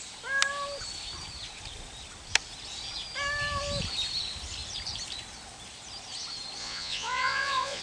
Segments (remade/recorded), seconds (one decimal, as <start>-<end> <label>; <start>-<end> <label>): 0.0-6.6 recorded; 6.6-7.8 remade